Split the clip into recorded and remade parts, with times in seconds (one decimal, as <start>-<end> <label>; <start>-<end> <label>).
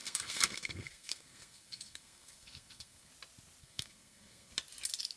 0.0-3.1 remade; 3.1-3.6 recorded; 3.6-4.5 remade; 4.5-5.2 recorded